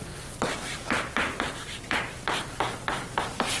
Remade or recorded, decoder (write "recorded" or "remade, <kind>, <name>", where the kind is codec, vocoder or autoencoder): recorded